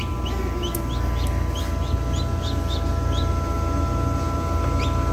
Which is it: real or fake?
real